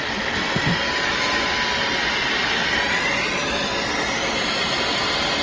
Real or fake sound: real